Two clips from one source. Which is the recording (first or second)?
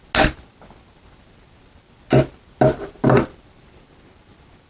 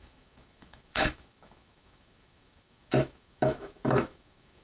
first